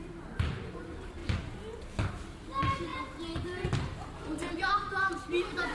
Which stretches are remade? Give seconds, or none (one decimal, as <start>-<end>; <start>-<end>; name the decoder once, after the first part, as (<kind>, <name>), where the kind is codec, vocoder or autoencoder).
0.0-1.2 (vocoder, BigVGAN v2); 2.1-5.7